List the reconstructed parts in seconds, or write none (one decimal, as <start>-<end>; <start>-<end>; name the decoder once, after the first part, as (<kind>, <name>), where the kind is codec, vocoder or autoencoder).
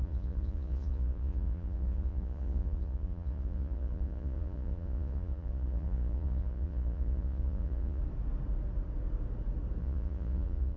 0.0-8.0 (vocoder, Vocos); 9.8-10.8